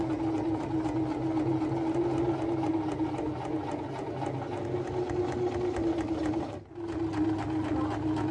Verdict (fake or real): real